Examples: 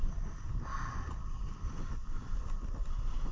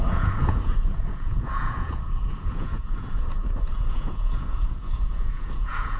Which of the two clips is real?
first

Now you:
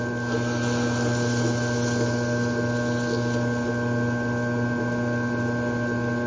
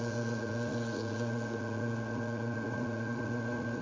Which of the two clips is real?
first